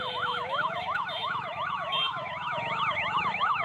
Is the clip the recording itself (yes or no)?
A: no